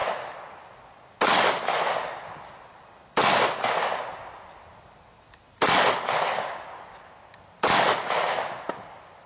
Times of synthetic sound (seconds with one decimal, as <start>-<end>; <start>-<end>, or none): none